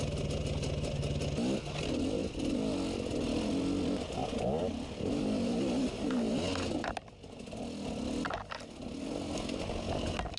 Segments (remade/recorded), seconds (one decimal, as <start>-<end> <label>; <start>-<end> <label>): 0.0-10.4 recorded